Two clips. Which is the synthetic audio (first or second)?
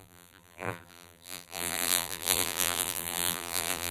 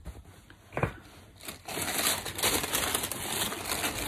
first